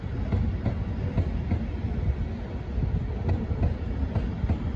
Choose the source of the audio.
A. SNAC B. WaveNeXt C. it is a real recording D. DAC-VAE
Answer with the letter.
C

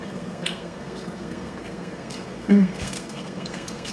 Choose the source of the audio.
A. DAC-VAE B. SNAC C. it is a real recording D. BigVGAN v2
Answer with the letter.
B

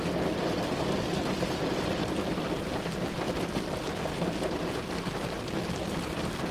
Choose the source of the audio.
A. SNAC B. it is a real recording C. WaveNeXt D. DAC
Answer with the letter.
B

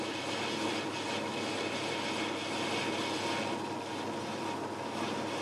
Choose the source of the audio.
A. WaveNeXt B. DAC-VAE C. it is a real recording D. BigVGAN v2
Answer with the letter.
C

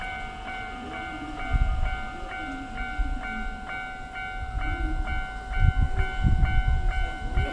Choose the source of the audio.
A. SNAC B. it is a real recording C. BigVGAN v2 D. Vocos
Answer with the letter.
B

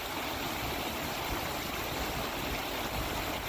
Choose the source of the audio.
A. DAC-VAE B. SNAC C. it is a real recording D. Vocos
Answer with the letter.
C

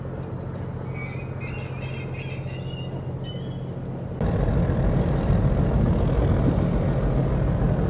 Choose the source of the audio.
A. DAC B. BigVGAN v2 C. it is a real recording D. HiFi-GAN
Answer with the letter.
C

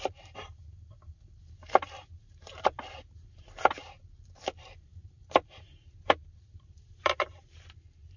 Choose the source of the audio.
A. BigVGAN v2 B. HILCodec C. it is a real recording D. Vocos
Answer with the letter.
A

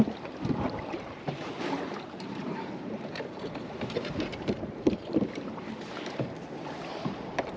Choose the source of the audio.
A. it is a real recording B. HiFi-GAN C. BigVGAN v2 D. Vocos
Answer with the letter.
C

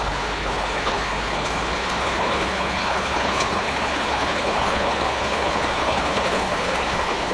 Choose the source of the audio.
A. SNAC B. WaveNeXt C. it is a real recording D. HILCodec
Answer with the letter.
D